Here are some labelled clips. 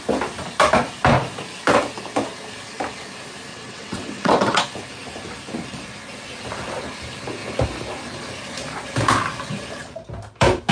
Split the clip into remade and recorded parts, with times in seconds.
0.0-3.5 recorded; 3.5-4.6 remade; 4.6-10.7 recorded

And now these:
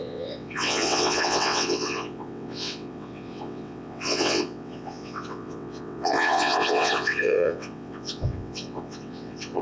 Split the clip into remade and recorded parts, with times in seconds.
0.0-9.6 remade

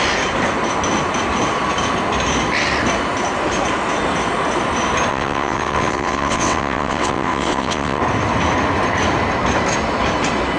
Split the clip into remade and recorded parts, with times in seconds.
0.0-5.1 recorded; 5.1-8.0 remade; 8.0-10.6 recorded

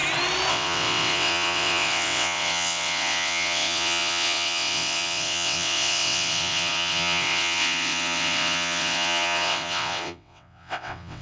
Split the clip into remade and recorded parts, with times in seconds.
0.0-0.5 recorded; 0.5-11.2 remade

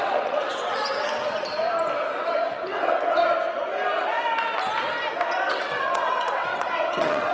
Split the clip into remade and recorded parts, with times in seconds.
0.0-1.6 remade; 1.6-2.1 recorded; 2.1-3.2 remade; 3.2-5.5 recorded; 5.5-7.3 remade

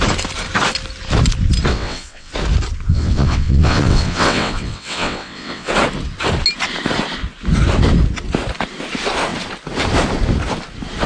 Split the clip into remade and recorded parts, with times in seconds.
0.0-1.7 recorded; 1.7-2.3 remade; 2.3-2.9 recorded; 2.9-5.7 remade; 5.7-11.1 recorded

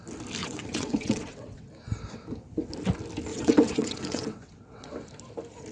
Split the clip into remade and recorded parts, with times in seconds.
0.0-0.4 recorded; 0.4-1.7 remade; 1.7-3.3 recorded; 3.3-4.9 remade; 4.9-5.7 recorded

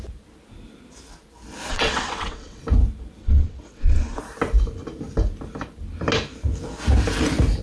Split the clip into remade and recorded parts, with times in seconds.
0.0-1.7 recorded; 1.7-2.6 remade; 2.6-3.2 recorded; 3.2-4.2 remade; 4.2-7.6 recorded